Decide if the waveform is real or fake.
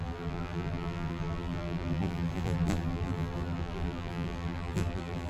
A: fake